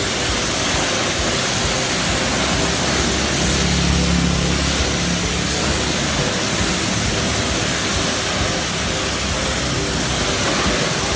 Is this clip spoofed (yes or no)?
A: no